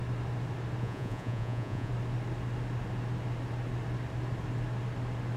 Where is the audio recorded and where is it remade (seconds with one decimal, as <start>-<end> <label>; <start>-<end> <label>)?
0.0-0.8 recorded; 0.8-1.9 remade; 1.9-5.4 recorded